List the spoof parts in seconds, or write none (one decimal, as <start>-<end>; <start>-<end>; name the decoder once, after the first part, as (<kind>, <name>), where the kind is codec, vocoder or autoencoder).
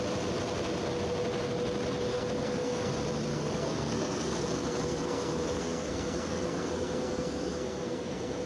2.1-2.9 (codec, SNAC); 3.3-8.5